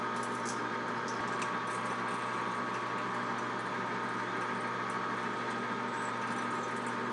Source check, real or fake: real